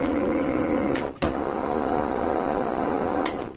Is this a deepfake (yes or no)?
yes